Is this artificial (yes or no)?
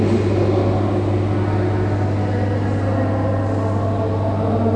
no